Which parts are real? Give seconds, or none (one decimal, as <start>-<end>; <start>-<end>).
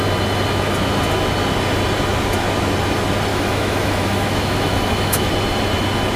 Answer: 0.0-3.3; 5.3-6.2